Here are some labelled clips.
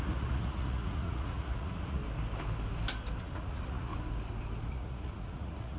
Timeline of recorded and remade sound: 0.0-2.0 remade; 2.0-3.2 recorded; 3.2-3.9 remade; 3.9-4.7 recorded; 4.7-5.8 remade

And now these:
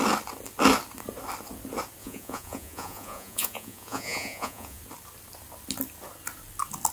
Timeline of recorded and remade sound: 0.0-2.0 recorded; 2.0-4.8 remade; 4.8-6.9 recorded

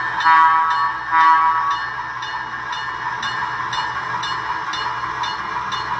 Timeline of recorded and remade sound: 0.0-6.0 recorded

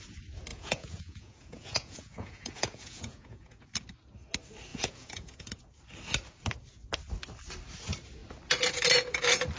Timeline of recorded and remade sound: 0.0-0.5 recorded; 0.5-3.7 remade; 3.7-4.7 recorded; 4.7-5.5 remade; 5.5-9.6 recorded